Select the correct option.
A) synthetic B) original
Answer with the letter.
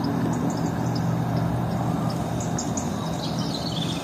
B